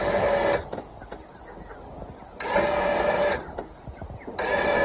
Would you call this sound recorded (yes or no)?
yes